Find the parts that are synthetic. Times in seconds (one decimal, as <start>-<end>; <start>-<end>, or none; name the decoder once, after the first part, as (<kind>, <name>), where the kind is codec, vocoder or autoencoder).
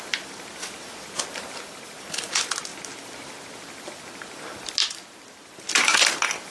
none